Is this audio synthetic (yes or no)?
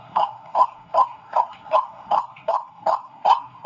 yes